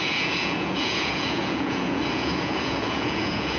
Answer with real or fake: fake